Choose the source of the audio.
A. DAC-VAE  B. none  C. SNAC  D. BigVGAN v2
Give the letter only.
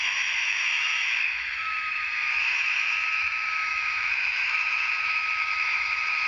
A